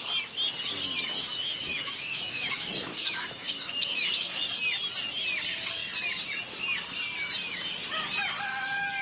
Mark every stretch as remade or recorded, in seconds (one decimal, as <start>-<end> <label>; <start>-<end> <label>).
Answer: 0.0-1.2 recorded; 1.2-4.4 remade; 4.4-9.0 recorded

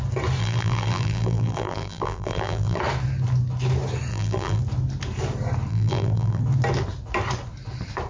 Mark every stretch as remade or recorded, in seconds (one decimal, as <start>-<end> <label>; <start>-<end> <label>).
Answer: 0.0-0.4 recorded; 0.4-2.8 remade; 2.8-4.1 recorded; 4.1-4.6 remade; 4.6-5.7 recorded; 5.7-6.4 remade; 6.4-8.1 recorded

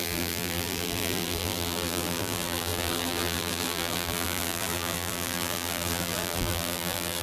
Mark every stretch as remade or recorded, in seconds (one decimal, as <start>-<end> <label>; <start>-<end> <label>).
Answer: 0.0-7.2 remade

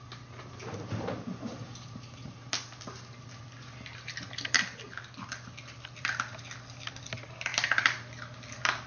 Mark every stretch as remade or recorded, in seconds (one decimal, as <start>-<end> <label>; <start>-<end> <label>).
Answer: 0.0-8.9 recorded

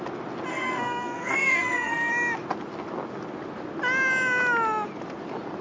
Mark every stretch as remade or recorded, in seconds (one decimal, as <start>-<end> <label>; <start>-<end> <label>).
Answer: 0.0-0.5 recorded; 0.5-2.1 remade; 2.1-5.6 recorded

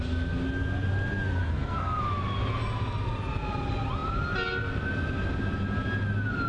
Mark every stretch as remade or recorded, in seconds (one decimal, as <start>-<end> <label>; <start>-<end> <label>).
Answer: 0.0-1.4 recorded; 1.4-2.0 remade; 2.0-6.5 recorded

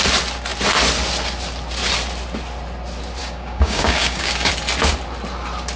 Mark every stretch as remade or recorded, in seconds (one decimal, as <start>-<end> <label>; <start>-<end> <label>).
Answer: 0.0-3.2 recorded; 3.2-4.5 remade; 4.5-5.8 recorded